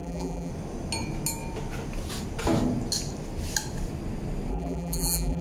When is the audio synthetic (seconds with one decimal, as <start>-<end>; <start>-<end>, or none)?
0.0-0.5; 4.5-5.4